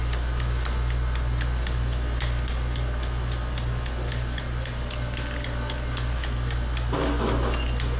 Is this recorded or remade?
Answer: recorded